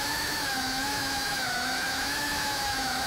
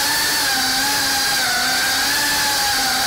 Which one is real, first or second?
second